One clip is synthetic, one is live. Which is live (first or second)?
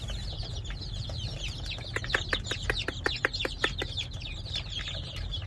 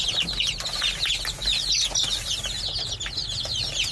second